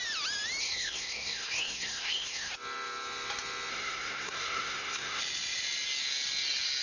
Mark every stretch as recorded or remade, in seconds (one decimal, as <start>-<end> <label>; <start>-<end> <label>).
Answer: 0.0-0.6 recorded; 0.6-2.5 remade; 2.5-3.7 recorded; 3.7-5.2 remade; 5.2-6.8 recorded